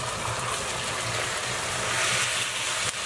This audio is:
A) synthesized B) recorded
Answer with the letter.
B